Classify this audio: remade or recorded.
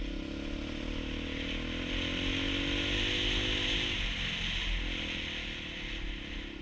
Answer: recorded